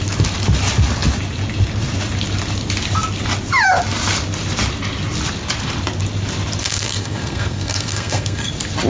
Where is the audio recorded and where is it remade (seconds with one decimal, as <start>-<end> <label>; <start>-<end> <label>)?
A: 0.0-6.6 recorded; 6.6-8.5 remade; 8.5-8.9 recorded